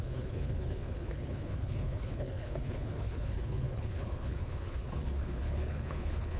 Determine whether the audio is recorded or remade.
remade